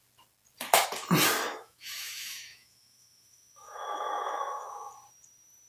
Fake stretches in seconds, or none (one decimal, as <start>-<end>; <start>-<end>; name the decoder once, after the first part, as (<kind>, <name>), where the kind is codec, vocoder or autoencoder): 1.5-4.9 (autoencoder, DAC-VAE)